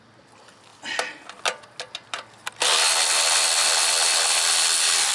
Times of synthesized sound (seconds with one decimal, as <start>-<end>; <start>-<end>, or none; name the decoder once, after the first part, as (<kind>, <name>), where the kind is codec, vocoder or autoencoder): none

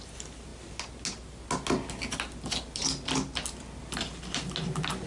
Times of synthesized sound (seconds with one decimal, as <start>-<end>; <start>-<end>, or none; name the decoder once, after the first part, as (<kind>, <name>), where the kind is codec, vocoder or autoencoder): none

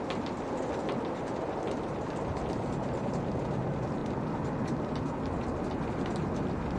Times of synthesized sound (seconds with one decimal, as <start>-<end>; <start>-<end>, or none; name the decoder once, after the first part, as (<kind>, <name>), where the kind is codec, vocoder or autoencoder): none

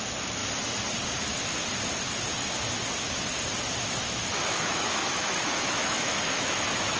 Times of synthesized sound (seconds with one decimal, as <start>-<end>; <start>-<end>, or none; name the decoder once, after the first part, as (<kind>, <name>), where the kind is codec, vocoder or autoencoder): 0.0-0.4 (autoencoder, DAC-VAE); 4.6-7.0

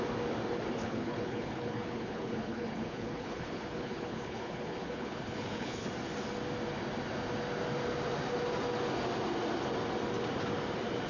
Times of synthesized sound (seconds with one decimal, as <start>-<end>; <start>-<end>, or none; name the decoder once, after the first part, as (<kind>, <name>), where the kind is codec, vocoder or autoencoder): 0.8-5.9 (codec, HILCodec)

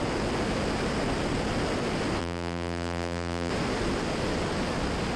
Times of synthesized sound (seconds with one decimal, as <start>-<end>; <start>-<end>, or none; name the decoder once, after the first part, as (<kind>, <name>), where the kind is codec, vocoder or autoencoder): 2.2-3.5 (vocoder, BigVGAN v2)

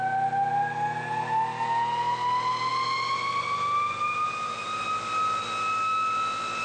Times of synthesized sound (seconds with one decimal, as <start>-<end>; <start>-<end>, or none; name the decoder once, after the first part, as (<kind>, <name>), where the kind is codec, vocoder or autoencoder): none

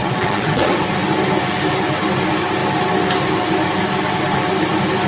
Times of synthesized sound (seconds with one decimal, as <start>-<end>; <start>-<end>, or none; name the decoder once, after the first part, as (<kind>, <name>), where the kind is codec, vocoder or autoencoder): 0.0-0.8 (vocoder, WaveNeXt)